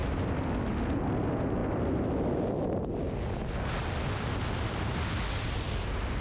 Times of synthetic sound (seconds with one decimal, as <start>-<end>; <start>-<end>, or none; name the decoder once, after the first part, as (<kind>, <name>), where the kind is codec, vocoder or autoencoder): none